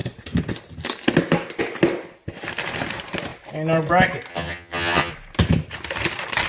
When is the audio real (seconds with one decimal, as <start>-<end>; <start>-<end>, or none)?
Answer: 0.0-4.3; 5.1-6.5